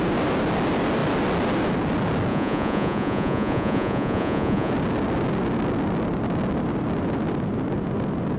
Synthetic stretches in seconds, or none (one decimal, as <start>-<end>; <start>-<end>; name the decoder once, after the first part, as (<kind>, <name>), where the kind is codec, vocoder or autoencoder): 2.3-4.7 (vocoder, Vocos)